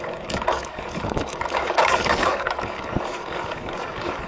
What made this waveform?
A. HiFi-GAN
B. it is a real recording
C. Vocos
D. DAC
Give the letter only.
D